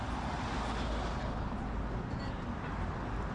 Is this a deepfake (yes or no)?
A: no